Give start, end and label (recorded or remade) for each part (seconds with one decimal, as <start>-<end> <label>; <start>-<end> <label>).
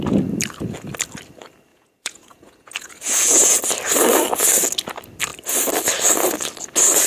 0.0-1.7 recorded; 1.7-3.6 remade; 3.6-7.1 recorded